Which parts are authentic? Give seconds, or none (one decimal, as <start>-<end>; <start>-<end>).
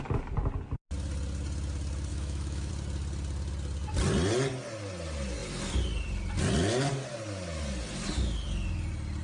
0.0-2.1; 2.7-9.2